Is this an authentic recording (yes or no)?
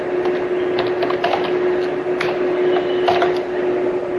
yes